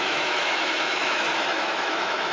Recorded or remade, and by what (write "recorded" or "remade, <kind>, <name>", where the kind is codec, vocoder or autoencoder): remade, autoencoder, DAC-VAE